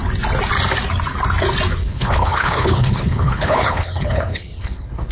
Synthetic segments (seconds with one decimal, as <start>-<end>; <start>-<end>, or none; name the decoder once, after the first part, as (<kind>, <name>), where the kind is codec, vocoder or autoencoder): 1.7-5.1 (codec, HILCodec)